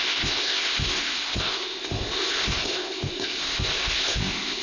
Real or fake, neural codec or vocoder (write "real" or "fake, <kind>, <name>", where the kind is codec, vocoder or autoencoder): fake, codec, ZipCodec